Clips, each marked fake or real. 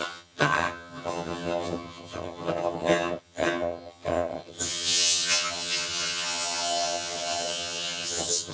fake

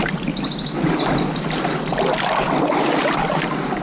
real